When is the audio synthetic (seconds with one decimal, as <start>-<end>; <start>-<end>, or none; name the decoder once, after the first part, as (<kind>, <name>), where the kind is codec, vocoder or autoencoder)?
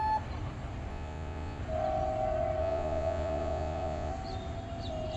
0.9-1.6 (vocoder, Vocos); 2.6-4.1